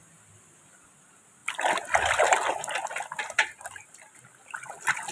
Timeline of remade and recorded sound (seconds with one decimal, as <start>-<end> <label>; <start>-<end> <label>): 0.0-5.1 recorded